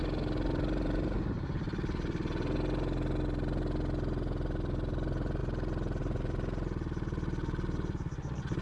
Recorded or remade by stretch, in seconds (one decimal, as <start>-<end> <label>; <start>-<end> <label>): 0.0-8.6 recorded

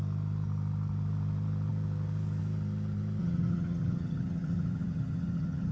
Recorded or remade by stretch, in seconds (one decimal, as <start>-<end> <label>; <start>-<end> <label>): 0.0-3.2 recorded; 3.2-5.7 remade

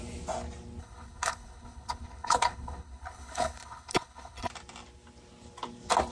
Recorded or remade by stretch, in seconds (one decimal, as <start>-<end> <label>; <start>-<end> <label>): 0.0-0.8 recorded; 0.8-4.5 remade; 4.5-6.1 recorded

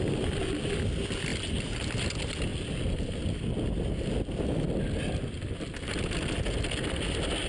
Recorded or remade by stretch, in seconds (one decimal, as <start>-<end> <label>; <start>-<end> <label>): 0.0-7.5 recorded

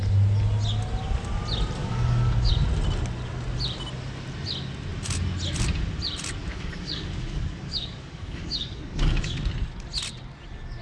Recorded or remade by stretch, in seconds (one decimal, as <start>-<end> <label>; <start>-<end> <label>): 0.0-1.8 recorded; 1.8-2.5 remade; 2.5-6.4 recorded; 6.4-9.4 remade; 9.4-10.8 recorded